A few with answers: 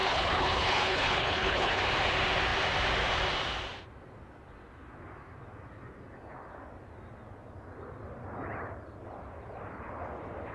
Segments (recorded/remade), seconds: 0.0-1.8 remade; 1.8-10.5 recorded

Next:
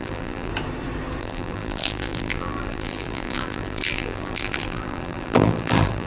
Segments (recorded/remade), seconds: 0.0-0.5 remade; 0.5-1.2 recorded; 1.2-6.1 remade

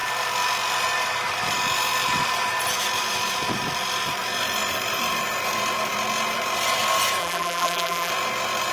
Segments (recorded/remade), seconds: 0.0-7.2 recorded; 7.2-8.1 remade; 8.1-8.7 recorded

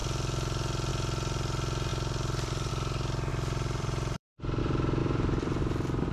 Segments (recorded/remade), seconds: 0.0-1.9 recorded; 1.9-2.7 remade; 2.7-3.3 recorded; 3.3-4.6 remade; 4.6-5.0 recorded; 5.0-5.6 remade; 5.6-6.1 recorded

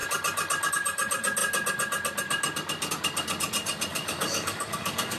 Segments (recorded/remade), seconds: 0.0-3.9 recorded; 3.9-5.2 remade

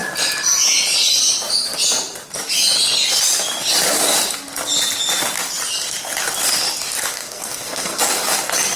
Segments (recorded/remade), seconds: 0.0-7.1 recorded; 7.1-8.0 remade; 8.0-8.8 recorded

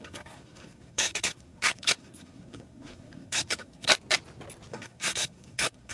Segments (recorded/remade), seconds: 0.0-3.9 remade; 3.9-4.7 recorded; 4.7-5.9 remade

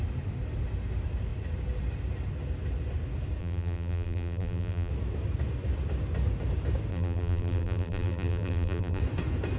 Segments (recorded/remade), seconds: 0.0-3.4 recorded; 3.4-4.9 remade; 4.9-6.9 recorded; 6.9-9.0 remade; 9.0-9.6 recorded